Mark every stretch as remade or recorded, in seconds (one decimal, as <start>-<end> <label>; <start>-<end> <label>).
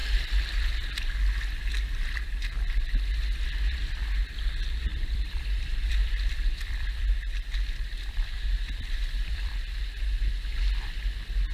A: 0.0-4.9 recorded; 4.9-9.5 remade; 9.5-11.5 recorded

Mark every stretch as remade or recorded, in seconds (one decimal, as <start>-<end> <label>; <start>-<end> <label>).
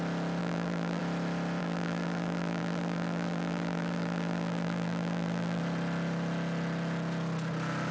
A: 0.0-0.4 recorded; 0.4-1.0 remade; 1.0-1.6 recorded; 1.6-5.6 remade; 5.6-7.9 recorded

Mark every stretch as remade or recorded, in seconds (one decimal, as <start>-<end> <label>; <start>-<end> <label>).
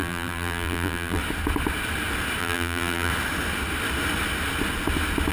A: 0.0-1.2 remade; 1.2-2.4 recorded; 2.4-3.1 remade; 3.1-5.3 recorded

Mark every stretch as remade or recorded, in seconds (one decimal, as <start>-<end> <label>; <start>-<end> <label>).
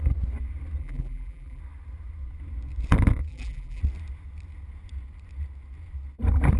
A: 0.0-0.8 recorded; 0.8-1.6 remade; 1.6-3.3 recorded; 3.3-3.8 remade; 3.8-6.6 recorded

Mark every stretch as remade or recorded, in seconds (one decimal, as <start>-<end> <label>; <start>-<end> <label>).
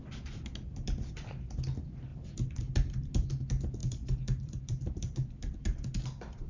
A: 0.0-2.1 recorded; 2.1-2.6 remade; 2.6-3.8 recorded; 3.8-5.3 remade; 5.3-6.5 recorded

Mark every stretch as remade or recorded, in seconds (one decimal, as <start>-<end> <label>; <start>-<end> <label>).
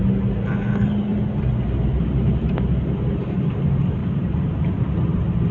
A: 0.0-4.0 recorded; 4.0-4.6 remade; 4.6-5.5 recorded